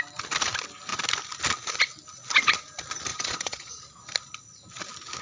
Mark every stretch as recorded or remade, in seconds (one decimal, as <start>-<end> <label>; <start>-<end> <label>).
0.0-3.1 recorded; 3.1-3.7 remade; 3.7-5.2 recorded